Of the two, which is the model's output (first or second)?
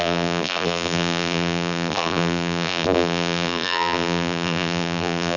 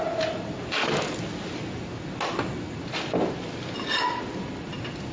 first